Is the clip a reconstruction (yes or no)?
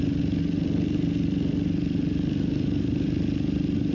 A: no